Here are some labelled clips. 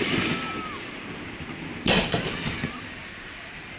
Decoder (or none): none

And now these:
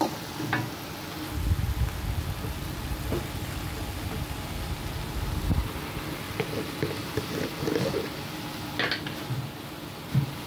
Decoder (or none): none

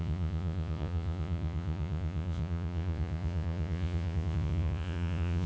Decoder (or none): vocoder, Vocos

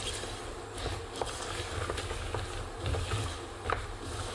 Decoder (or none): none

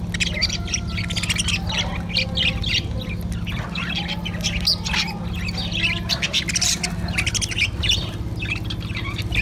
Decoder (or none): none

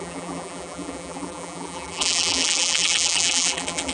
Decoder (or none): vocoder, BigVGAN v2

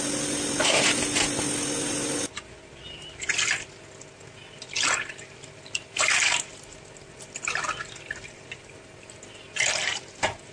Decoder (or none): none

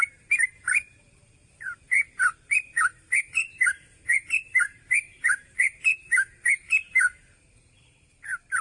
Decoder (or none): vocoder, BigVGAN v2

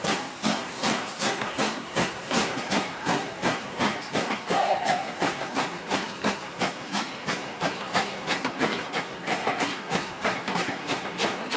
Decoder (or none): codec, SNAC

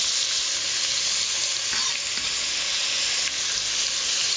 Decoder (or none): none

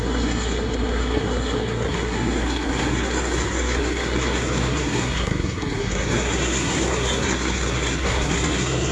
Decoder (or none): codec, SNAC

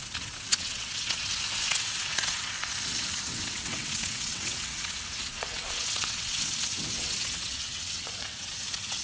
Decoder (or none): vocoder, WaveNeXt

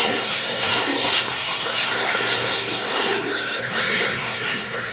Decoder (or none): codec, SNAC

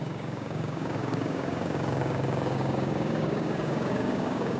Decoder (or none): codec, DAC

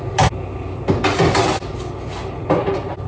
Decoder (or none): none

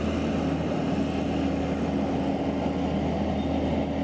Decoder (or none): none